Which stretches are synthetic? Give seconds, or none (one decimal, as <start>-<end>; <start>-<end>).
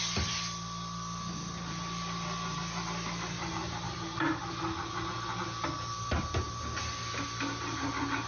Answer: none